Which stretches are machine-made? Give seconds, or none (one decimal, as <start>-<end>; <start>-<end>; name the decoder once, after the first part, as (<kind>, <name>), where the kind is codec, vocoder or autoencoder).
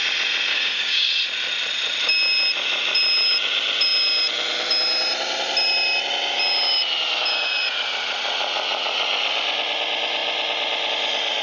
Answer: 0.5-1.1 (codec, DAC)